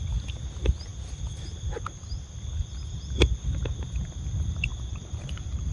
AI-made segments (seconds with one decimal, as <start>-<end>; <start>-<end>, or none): 4.7-5.7

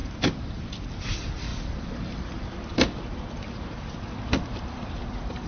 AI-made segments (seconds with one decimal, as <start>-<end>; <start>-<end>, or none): 0.0-5.5